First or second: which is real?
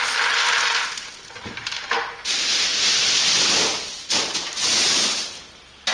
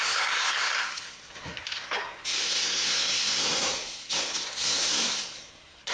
first